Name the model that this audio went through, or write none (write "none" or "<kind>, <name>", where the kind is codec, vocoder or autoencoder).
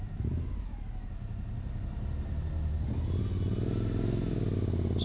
none